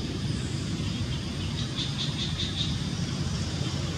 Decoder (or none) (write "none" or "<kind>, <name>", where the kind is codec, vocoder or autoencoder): vocoder, BigVGAN v2